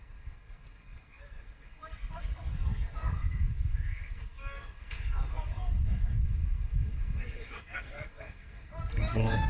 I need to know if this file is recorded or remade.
remade